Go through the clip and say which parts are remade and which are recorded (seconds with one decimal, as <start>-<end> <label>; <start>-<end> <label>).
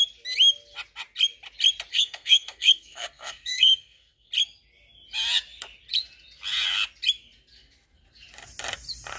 0.0-1.9 recorded; 1.9-4.3 remade; 4.3-9.2 recorded